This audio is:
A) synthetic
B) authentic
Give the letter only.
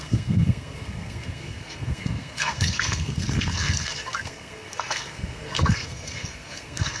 A